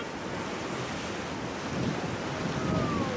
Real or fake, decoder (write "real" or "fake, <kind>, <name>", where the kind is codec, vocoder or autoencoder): real